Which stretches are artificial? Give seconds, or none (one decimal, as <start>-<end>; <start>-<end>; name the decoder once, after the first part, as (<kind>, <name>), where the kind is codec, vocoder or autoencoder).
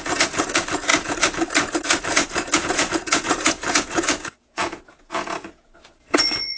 0.0-6.6 (vocoder, Vocos)